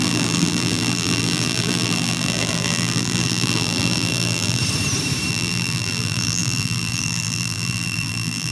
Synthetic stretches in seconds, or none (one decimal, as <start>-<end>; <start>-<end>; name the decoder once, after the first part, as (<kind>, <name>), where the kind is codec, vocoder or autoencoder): 0.0-4.6 (vocoder, BigVGAN v2); 5.3-8.5